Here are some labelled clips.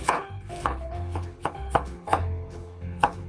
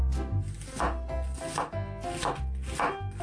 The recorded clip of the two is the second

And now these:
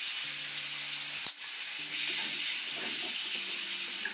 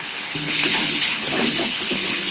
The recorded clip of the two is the first